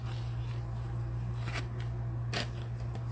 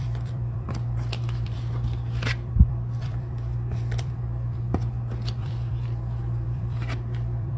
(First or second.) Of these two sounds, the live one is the first